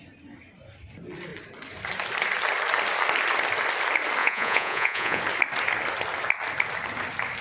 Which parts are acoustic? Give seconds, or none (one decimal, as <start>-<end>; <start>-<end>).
0.0-4.2; 5.2-7.4